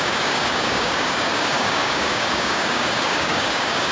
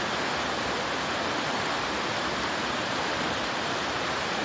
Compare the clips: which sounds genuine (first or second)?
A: second